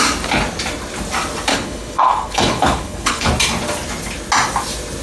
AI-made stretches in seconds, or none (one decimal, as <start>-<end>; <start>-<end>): 1.5-3.3